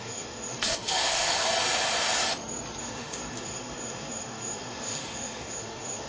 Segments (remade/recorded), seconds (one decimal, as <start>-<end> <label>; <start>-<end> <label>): 0.0-1.4 remade; 1.4-2.8 recorded; 2.8-6.1 remade